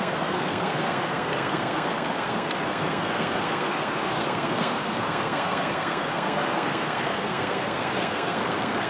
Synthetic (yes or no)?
yes